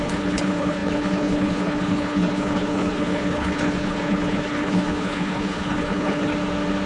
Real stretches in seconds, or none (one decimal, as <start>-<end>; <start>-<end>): 6.3-6.9